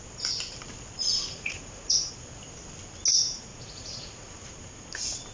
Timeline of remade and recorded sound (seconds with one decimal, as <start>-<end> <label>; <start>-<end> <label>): 0.0-1.0 recorded; 1.0-2.1 remade; 2.1-3.5 recorded; 3.5-4.3 remade; 4.3-5.3 recorded